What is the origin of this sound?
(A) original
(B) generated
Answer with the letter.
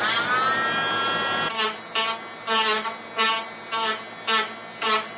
A